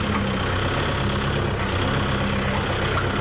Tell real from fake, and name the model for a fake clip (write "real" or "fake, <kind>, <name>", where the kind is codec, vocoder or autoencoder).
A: real